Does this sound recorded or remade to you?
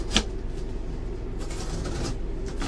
recorded